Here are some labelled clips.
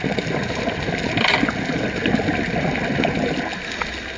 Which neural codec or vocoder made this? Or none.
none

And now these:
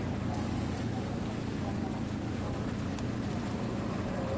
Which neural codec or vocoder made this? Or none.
none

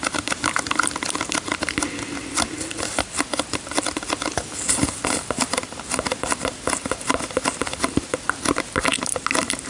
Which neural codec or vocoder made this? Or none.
none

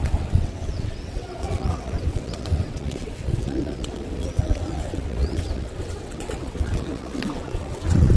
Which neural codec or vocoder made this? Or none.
vocoder, WaveNeXt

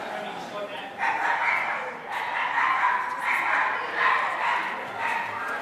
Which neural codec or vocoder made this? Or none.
none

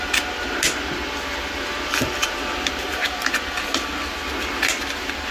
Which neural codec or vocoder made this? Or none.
none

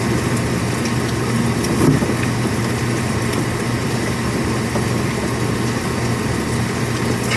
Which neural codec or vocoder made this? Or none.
none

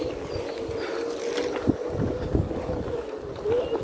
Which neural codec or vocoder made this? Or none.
none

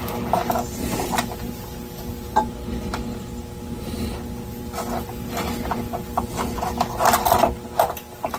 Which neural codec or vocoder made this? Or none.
none